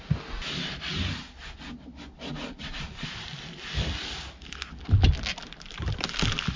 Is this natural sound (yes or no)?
yes